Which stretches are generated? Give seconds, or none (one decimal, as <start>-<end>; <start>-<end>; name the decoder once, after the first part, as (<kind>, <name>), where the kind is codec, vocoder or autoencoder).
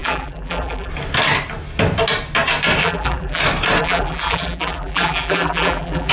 0.0-0.9 (vocoder, BigVGAN v2); 2.8-3.4; 3.8-6.1